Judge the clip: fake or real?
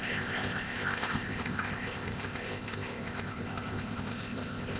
fake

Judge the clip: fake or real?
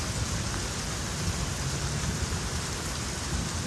real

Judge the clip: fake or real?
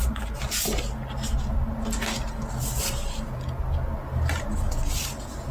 real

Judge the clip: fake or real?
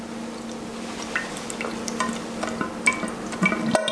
real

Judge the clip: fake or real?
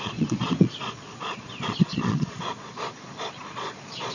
fake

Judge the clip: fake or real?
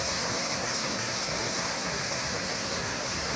fake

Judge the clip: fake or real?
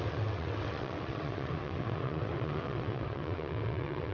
fake